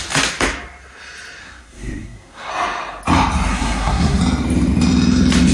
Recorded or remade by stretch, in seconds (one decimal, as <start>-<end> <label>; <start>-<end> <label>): 0.0-1.4 recorded; 1.4-2.5 remade; 2.5-3.5 recorded; 3.5-4.2 remade; 4.2-5.5 recorded